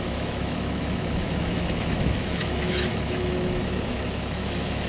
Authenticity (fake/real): fake